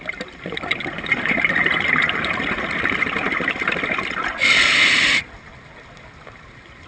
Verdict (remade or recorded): recorded